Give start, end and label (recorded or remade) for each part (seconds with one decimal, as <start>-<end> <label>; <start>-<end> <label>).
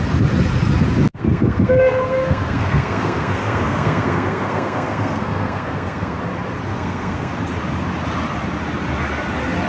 0.0-1.1 recorded; 1.1-6.2 remade; 6.2-6.7 recorded; 6.7-7.3 remade; 7.3-9.7 recorded